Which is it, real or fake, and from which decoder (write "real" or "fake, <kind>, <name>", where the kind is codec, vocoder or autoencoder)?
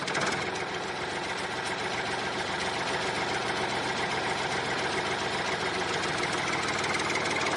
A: real